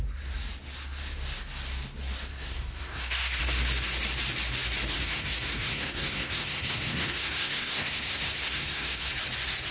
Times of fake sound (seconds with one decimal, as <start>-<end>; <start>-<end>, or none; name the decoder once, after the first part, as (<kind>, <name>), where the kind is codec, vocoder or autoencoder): 2.3-3.4 (codec, SNAC); 4.9-9.1